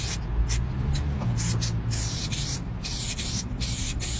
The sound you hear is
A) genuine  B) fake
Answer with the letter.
A